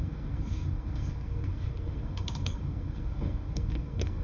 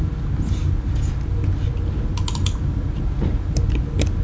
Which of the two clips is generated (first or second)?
first